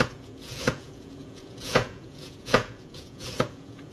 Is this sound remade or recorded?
remade